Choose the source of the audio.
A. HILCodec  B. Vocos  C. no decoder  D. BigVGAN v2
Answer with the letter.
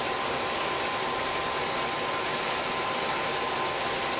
D